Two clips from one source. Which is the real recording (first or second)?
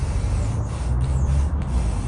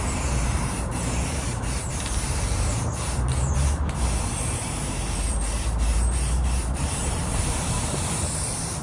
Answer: first